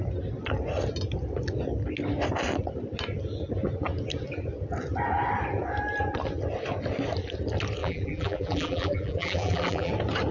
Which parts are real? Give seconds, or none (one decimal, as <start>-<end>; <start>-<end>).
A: 0.0-7.8; 9.9-10.3